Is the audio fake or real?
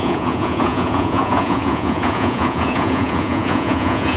fake